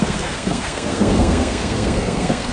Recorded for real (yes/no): no